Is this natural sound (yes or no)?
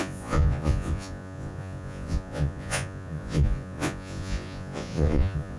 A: no